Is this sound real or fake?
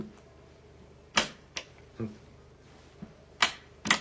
real